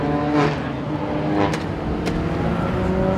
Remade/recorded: recorded